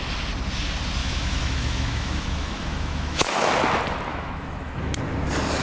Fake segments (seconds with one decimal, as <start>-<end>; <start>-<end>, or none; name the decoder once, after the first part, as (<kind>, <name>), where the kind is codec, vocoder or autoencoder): 1.0-3.5 (autoencoder, DAC-VAE); 4.1-5.0